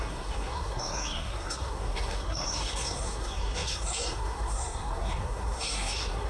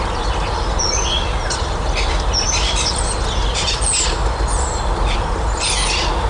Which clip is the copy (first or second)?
first